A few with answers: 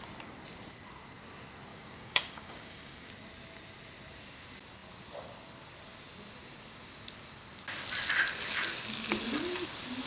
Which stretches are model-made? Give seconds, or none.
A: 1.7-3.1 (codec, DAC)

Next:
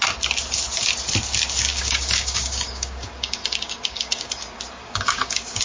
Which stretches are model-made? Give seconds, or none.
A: 1.7-4.3 (codec, DAC); 4.8-5.6